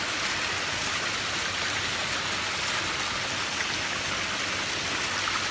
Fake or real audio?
real